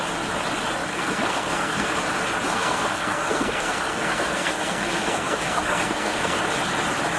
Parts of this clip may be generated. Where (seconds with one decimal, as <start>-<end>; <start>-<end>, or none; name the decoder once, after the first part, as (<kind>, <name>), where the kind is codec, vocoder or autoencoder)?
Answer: 0.9-2.0 (codec, SNAC); 2.5-6.4